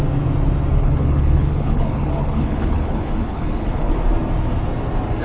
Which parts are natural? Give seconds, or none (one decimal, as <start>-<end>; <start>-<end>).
0.0-0.8; 3.9-5.2